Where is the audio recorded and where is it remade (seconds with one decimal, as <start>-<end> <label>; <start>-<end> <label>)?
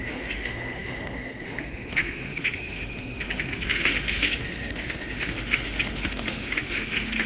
0.0-7.3 remade